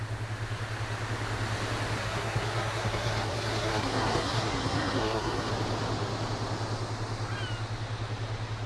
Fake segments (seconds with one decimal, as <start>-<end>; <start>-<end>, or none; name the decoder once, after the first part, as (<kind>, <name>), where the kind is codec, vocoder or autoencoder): 2.0-5.5 (codec, SNAC)